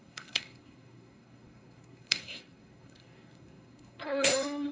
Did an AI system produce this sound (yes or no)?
yes